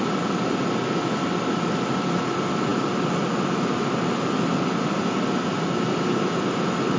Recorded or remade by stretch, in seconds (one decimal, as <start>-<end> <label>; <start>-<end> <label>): 0.0-7.0 recorded